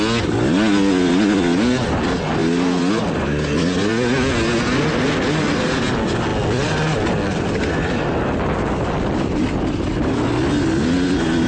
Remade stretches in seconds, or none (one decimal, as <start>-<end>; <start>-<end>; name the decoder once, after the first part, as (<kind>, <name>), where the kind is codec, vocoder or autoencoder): none